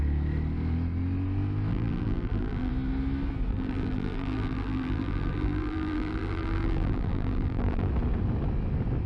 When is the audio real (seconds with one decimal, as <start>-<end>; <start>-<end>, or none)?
0.0-1.7; 2.7-3.5; 7.9-9.1